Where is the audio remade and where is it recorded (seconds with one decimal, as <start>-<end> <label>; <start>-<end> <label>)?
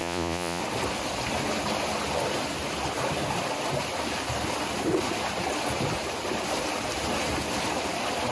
0.0-0.6 remade; 0.6-8.3 recorded